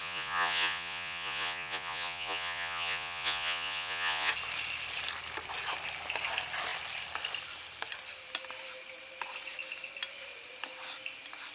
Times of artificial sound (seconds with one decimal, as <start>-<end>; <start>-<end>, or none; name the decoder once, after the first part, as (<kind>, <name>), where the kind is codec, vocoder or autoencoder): 0.0-4.3 (vocoder, Vocos)